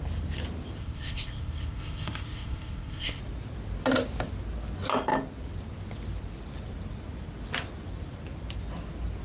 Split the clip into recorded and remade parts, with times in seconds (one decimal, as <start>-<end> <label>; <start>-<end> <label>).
0.0-0.8 recorded; 0.8-3.2 remade; 3.2-9.2 recorded